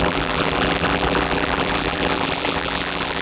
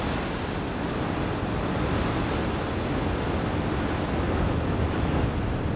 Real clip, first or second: second